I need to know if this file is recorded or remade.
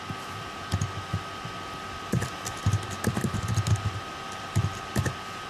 recorded